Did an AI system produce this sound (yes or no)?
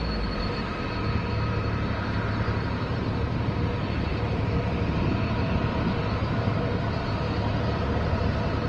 yes